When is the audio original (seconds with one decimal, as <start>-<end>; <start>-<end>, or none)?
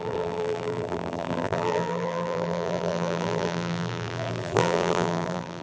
none